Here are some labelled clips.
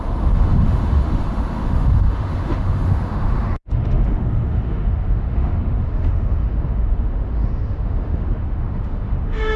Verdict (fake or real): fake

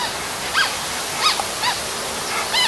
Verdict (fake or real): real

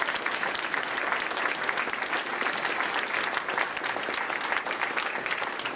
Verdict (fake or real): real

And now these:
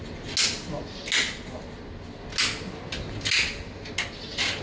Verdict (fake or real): real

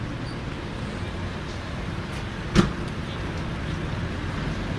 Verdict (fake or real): real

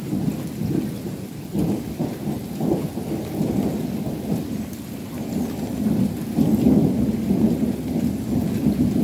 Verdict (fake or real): real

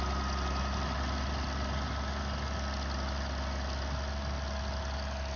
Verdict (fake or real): real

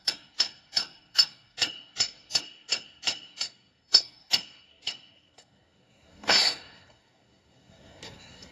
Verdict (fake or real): fake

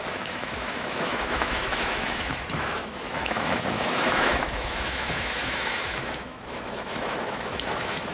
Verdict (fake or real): fake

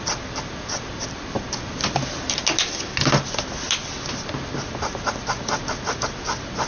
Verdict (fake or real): real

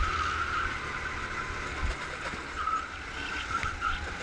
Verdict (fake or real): real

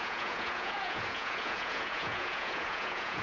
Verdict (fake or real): fake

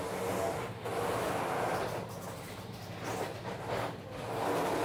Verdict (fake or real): real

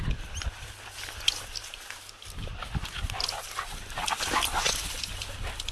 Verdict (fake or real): real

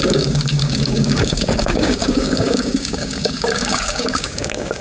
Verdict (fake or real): fake